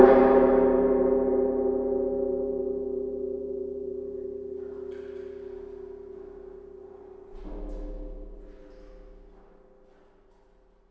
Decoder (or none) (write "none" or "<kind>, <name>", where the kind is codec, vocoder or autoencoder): none